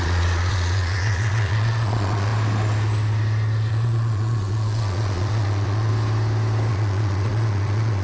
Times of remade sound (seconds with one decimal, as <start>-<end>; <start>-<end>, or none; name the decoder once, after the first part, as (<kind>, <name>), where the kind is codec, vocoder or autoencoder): 0.0-2.3 (vocoder, Vocos); 3.7-5.9; 6.7-8.0

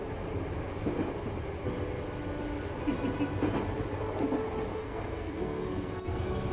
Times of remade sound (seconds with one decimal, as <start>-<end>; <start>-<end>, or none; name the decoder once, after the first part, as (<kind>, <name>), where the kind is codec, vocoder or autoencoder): 4.7-6.5 (codec, SNAC)

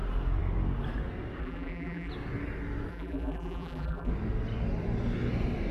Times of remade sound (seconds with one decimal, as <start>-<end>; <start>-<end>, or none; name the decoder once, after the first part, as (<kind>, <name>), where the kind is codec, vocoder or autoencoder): 1.4-2.1 (vocoder, BigVGAN v2); 2.9-4.1

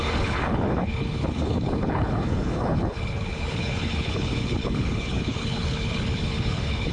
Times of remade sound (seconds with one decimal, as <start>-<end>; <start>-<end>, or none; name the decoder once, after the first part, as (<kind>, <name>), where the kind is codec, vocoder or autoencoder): 0.0-6.9 (codec, HILCodec)

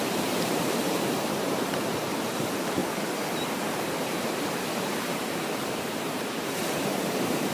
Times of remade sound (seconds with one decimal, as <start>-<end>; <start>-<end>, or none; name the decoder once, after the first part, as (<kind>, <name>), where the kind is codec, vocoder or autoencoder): 0.0-2.8 (vocoder, BigVGAN v2); 3.8-7.5

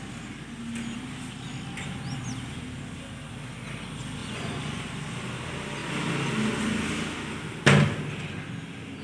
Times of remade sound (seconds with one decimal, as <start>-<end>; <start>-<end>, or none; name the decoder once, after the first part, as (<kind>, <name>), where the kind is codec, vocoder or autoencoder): 4.2-4.8 (vocoder, Vocos)

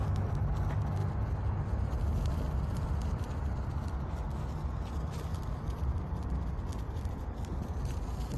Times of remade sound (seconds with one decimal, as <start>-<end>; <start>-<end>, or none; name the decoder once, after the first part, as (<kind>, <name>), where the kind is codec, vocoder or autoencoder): none

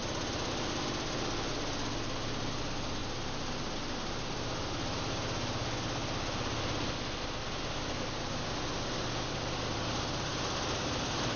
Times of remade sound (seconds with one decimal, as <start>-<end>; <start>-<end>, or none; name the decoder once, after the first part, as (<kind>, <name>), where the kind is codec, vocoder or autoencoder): none